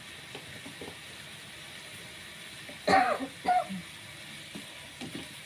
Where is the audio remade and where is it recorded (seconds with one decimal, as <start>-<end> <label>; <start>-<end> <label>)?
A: 0.0-5.5 recorded